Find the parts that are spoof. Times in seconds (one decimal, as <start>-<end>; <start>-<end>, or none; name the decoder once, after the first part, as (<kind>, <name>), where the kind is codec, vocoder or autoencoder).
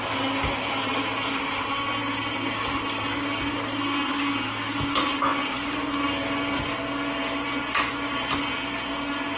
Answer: none